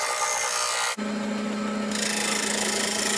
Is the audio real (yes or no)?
yes